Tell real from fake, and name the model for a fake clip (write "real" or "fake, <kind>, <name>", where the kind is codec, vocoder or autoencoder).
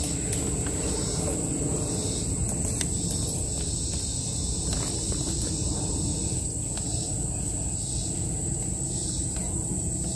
real